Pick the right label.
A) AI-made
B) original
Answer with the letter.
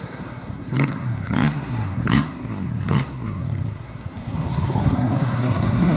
A